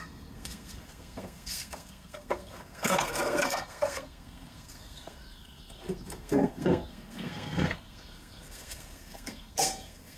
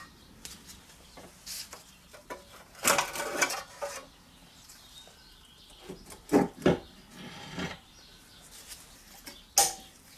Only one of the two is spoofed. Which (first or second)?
first